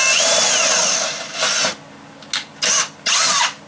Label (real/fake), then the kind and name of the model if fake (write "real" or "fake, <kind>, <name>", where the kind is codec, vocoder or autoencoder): real